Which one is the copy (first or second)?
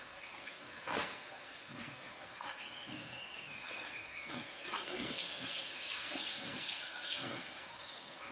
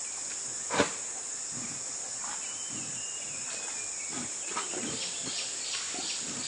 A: first